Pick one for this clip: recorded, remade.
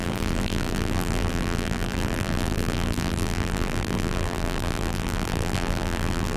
remade